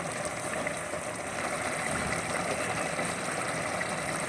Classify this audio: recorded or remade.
recorded